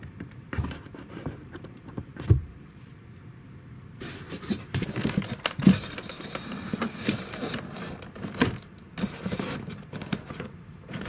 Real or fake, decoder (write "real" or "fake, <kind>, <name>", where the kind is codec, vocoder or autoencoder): fake, vocoder, BigVGAN v2